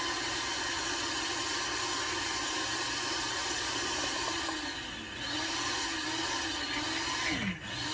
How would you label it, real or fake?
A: real